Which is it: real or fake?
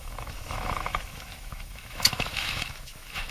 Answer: fake